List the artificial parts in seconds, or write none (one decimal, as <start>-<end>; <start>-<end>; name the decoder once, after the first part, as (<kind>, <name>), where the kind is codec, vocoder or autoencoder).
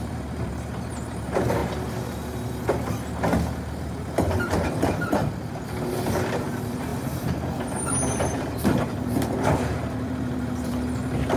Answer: 0.0-1.6 (vocoder, BigVGAN v2); 3.8-5.2; 6.4-11.4